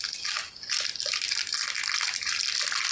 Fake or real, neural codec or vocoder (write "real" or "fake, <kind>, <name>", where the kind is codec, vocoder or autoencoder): real